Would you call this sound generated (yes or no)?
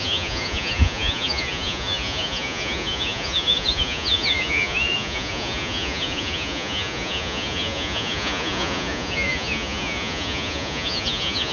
yes